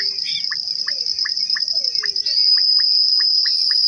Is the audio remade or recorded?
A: remade